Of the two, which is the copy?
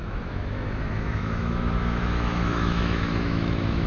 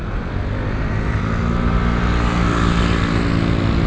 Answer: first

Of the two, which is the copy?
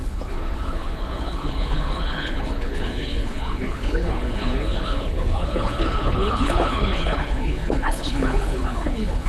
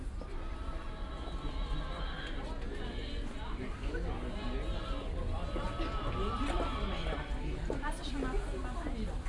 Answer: first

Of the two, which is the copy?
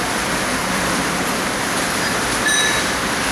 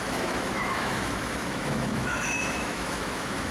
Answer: second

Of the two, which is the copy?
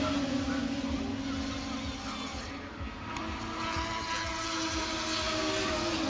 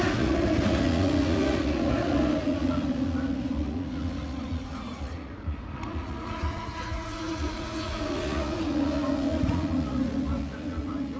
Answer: second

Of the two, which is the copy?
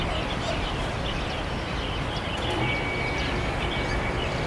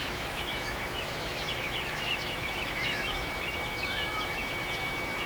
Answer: second